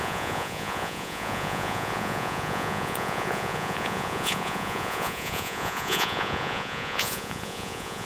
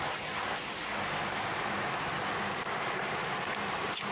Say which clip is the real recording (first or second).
second